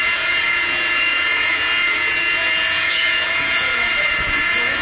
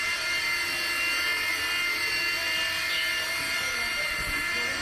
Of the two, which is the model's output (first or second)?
first